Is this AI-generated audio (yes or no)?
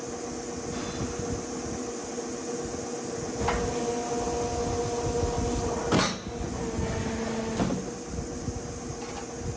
no